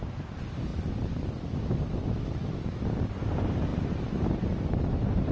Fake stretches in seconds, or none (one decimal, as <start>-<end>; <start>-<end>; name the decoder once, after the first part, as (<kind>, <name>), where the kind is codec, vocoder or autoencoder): none